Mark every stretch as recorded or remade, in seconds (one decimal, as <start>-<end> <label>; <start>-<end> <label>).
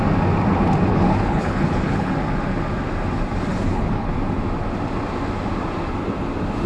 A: 0.0-0.9 recorded; 0.9-2.1 remade; 2.1-3.5 recorded; 3.5-4.1 remade; 4.1-6.7 recorded